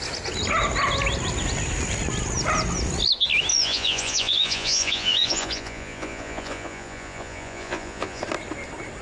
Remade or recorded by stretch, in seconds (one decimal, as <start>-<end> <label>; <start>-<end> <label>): 0.0-3.5 recorded; 3.5-8.2 remade; 8.2-9.0 recorded